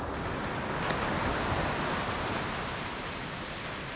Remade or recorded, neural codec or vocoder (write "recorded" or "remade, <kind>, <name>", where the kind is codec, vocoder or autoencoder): recorded